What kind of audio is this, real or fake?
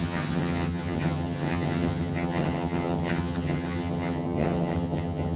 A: fake